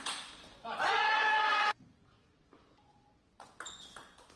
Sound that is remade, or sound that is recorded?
remade